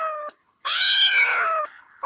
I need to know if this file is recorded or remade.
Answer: remade